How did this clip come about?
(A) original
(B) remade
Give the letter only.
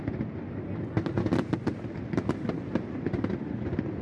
A